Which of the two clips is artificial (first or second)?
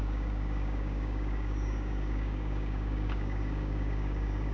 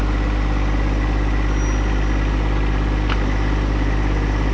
first